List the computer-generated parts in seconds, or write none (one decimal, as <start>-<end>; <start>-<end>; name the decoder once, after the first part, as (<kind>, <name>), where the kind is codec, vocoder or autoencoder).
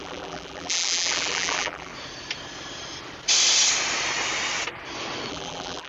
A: 0.0-1.9 (vocoder, BigVGAN v2); 5.3-5.9